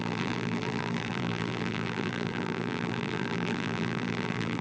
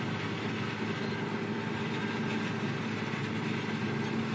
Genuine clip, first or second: second